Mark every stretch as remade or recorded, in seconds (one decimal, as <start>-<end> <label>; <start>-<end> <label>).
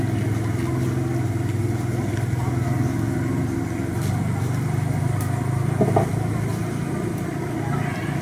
0.0-8.2 recorded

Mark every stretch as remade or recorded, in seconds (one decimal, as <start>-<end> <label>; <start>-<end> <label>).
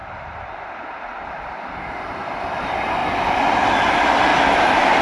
0.0-4.3 remade; 4.3-5.0 recorded